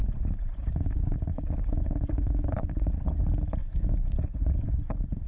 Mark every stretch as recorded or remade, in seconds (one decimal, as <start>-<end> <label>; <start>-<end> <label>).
0.0-3.2 remade; 3.2-3.6 recorded; 3.6-5.3 remade

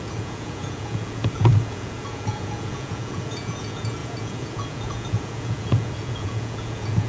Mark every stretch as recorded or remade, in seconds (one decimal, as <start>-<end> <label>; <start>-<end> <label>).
0.0-7.1 remade

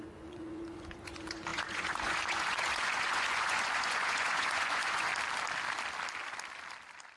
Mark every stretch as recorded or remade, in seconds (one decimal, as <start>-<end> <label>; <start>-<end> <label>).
0.0-5.1 remade; 5.1-7.2 recorded

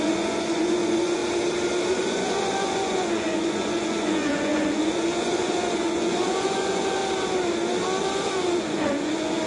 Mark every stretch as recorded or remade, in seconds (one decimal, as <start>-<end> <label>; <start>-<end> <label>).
0.0-1.2 remade; 1.2-1.9 recorded; 1.9-7.0 remade; 7.0-8.3 recorded; 8.3-9.5 remade

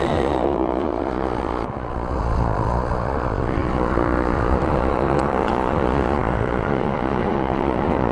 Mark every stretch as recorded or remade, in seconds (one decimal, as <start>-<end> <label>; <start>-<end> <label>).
0.0-8.1 remade

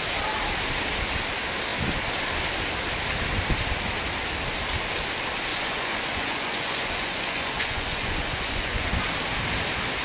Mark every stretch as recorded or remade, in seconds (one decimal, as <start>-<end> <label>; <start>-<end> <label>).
0.0-5.5 recorded; 5.5-9.0 remade; 9.0-10.0 recorded